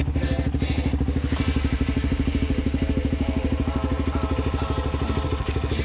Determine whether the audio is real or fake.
real